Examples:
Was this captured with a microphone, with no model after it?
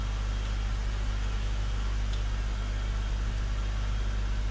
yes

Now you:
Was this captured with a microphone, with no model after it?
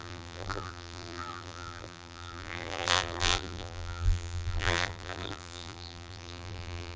no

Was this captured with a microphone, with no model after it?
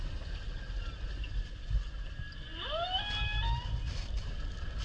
yes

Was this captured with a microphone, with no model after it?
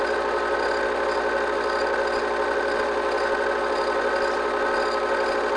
yes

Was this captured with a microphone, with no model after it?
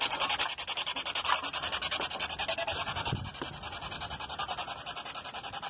yes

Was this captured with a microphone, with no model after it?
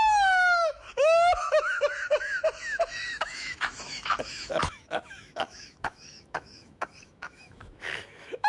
no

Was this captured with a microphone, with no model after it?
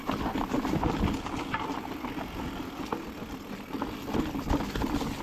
yes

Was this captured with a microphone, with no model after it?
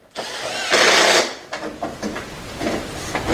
yes